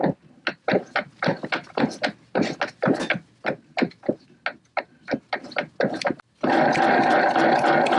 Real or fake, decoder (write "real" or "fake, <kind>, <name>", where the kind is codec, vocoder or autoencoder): real